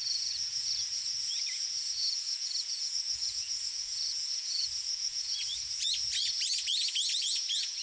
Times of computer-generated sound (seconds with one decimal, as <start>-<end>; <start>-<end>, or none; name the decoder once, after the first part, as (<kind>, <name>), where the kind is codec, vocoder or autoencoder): 0.0-7.8 (vocoder, Vocos)